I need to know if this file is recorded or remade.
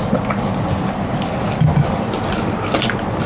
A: recorded